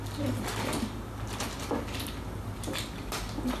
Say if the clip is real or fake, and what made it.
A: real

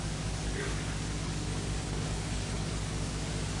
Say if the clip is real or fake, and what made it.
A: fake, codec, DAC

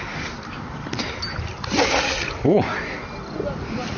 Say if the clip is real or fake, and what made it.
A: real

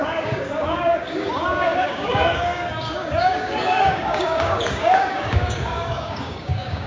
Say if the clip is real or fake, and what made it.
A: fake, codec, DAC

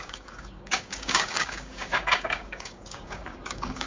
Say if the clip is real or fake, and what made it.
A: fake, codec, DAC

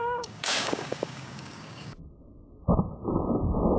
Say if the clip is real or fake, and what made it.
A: fake, codec, DAC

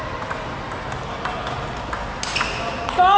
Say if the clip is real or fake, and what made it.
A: real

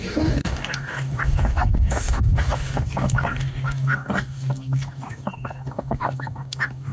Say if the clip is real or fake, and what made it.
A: fake, codec, DAC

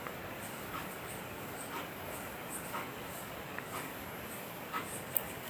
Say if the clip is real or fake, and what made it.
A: fake, codec, DAC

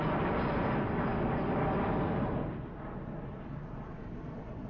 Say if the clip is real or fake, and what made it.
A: real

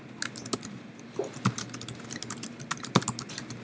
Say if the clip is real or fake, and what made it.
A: real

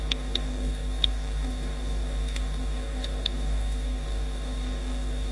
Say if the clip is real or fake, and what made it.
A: fake, codec, DAC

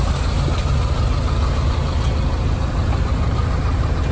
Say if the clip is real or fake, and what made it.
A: real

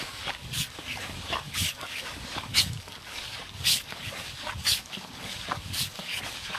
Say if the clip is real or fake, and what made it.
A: fake, codec, DAC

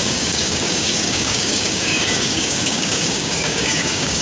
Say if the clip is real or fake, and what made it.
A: fake, codec, DAC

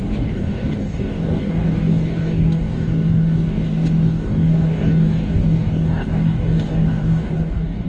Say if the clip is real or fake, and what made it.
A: fake, codec, DAC